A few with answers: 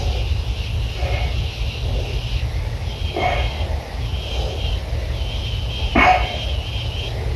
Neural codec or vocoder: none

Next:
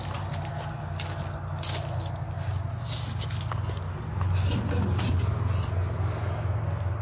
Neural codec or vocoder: none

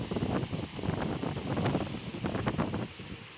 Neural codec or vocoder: none